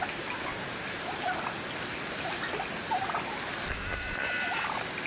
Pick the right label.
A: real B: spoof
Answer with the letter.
A